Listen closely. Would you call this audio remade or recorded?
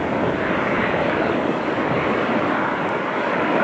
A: remade